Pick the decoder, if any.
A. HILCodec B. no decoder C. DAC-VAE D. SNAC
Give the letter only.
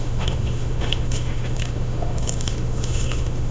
C